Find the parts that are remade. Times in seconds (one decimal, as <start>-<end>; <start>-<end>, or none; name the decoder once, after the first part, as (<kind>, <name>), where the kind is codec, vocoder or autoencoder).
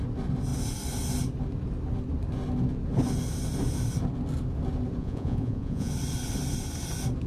5.0-5.9 (vocoder, Vocos)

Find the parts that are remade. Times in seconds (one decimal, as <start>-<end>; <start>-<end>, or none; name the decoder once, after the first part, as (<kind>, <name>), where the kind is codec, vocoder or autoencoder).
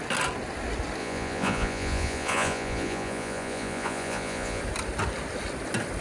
1.0-4.6 (vocoder, Vocos)